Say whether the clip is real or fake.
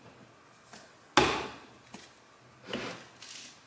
real